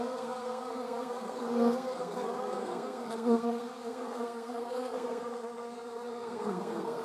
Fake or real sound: fake